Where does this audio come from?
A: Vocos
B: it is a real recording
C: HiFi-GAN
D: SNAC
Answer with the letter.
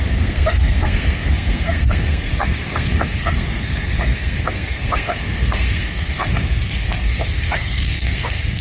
D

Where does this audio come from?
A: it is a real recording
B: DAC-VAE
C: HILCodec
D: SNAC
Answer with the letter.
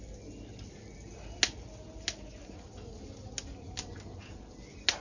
A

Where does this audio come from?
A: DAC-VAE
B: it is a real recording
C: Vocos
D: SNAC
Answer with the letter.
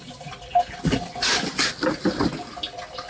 B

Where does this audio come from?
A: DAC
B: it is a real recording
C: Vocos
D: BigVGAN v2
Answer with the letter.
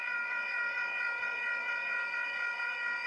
A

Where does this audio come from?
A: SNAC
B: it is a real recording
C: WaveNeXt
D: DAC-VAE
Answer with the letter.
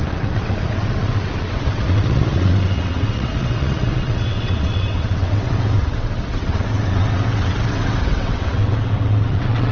C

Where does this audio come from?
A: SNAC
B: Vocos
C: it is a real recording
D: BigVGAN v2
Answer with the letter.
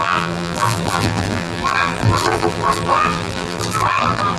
D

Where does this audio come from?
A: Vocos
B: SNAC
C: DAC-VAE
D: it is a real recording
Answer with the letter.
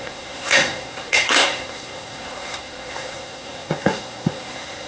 B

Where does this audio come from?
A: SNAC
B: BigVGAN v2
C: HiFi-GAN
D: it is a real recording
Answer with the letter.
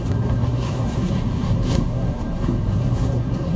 A